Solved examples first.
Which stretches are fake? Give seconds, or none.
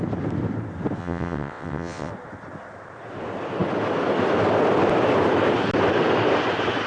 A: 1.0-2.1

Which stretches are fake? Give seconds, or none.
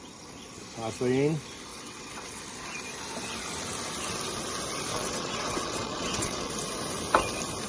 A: 1.7-2.4; 4.9-6.5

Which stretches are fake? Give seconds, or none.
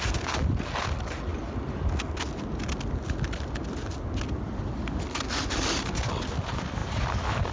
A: none